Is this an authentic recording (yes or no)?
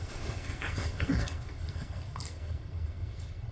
no